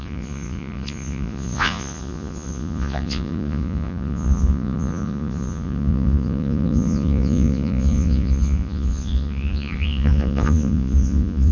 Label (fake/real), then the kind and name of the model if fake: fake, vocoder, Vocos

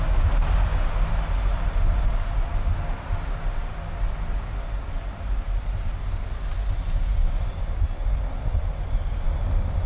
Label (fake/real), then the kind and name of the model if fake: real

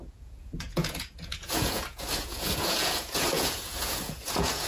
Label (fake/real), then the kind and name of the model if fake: fake, vocoder, Vocos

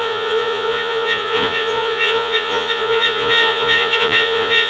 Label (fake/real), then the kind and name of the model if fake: fake, vocoder, Vocos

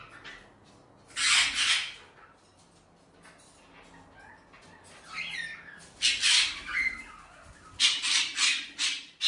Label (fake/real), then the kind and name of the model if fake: real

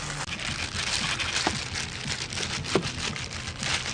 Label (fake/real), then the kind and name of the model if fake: real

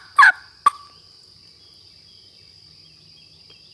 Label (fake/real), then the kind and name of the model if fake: real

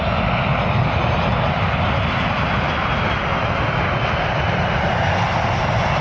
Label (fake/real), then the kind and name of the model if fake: real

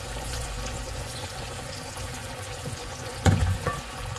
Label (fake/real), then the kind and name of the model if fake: fake, vocoder, Vocos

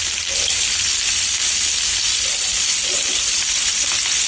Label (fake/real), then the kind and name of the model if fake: real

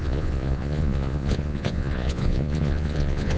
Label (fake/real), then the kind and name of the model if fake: fake, vocoder, Vocos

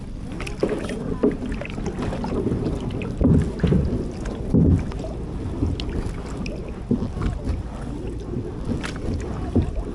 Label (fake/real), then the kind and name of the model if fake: real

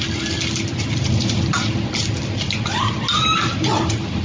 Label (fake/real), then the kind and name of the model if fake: real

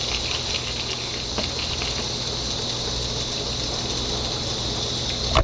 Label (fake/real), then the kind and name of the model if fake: real